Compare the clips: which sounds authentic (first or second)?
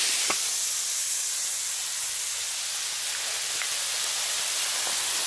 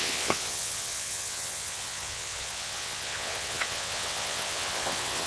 first